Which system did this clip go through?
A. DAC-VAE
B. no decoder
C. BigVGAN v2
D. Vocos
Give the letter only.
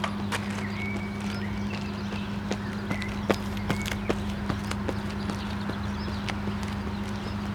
B